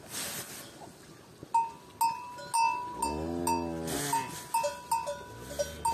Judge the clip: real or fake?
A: real